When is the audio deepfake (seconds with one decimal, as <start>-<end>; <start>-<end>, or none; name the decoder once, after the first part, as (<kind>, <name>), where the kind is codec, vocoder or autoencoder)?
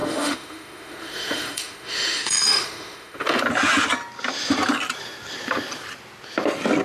0.0-3.4 (autoencoder, DAC-VAE)